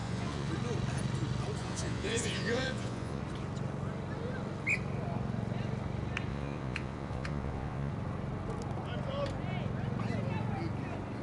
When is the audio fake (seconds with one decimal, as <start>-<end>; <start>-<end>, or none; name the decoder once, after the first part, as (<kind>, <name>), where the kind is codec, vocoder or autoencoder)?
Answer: 0.0-0.5 (vocoder, Vocos); 1.6-3.2; 6.3-7.9